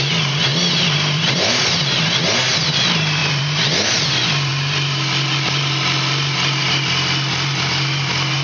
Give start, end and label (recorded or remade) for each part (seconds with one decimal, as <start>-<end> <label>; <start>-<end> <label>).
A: 0.0-0.5 recorded; 0.5-2.2 remade; 2.2-3.2 recorded; 3.2-4.1 remade; 4.1-8.4 recorded